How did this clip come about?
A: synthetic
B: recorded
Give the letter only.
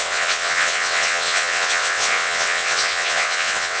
A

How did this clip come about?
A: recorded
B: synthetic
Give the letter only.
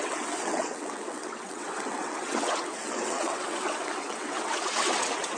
B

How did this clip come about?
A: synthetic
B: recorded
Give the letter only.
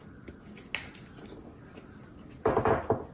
B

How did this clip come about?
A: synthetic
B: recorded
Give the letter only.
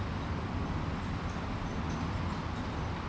B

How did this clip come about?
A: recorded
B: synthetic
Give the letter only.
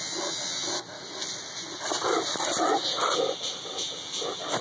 A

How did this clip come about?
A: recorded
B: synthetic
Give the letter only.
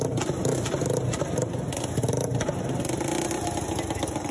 A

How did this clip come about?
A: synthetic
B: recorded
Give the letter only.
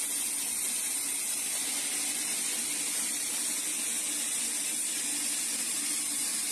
B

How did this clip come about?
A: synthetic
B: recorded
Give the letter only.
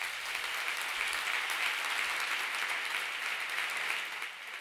B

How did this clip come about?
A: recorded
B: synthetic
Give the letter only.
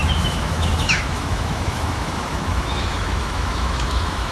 B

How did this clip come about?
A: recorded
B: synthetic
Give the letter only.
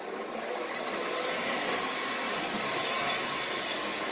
A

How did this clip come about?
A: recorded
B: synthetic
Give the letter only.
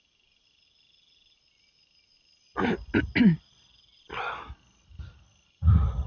A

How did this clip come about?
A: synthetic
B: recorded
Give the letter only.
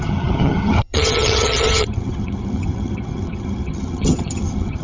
A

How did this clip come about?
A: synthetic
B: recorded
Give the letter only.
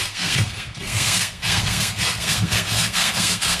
A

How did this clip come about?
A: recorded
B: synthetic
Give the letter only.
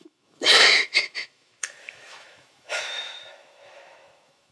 B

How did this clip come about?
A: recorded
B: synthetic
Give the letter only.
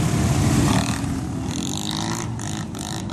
A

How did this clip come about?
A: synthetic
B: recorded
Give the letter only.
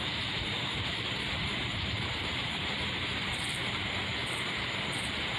A